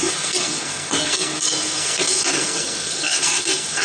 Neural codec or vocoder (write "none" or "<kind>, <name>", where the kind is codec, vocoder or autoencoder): codec, SNAC